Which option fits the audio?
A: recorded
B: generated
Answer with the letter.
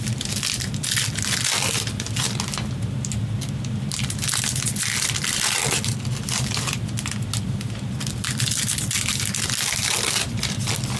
A